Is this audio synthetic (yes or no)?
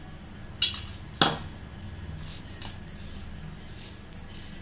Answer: no